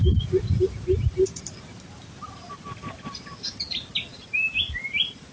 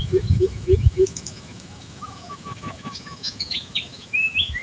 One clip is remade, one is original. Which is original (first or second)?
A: first